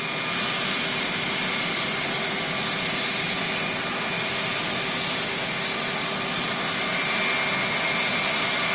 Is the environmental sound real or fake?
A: real